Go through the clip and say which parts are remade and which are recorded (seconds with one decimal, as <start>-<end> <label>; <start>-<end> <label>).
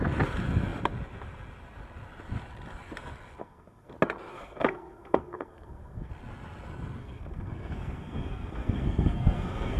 0.0-3.4 recorded; 3.4-3.9 remade; 3.9-4.3 recorded; 4.3-6.1 remade; 6.1-7.0 recorded; 7.0-9.8 remade